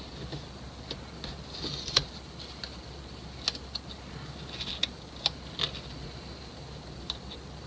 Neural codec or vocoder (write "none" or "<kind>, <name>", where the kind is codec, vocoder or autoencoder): none